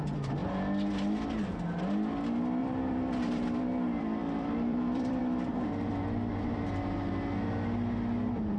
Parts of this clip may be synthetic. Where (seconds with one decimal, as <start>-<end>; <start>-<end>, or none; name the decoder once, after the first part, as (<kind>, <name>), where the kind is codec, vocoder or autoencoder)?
2.6-3.6 (vocoder, BigVGAN v2); 4.2-5.2